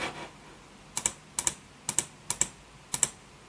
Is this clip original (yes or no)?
yes